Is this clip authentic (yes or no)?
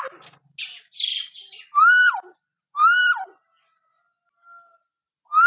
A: yes